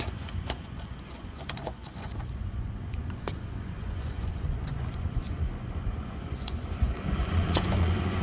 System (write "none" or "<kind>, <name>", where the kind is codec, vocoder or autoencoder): vocoder, Vocos